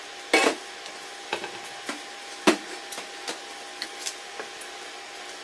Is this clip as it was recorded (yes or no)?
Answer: yes